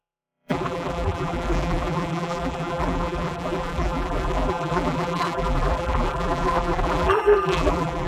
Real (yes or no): no